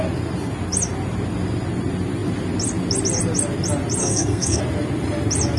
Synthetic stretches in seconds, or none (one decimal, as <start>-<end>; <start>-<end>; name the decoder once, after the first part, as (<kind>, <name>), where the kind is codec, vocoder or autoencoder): 4.0-4.6 (codec, SNAC)